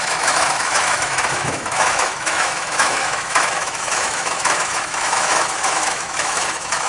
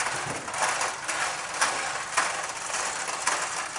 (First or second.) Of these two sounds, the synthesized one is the first